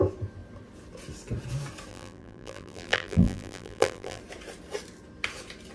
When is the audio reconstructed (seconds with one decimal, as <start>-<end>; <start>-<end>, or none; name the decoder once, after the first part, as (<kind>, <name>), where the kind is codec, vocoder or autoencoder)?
1.9-4.2 (vocoder, BigVGAN v2)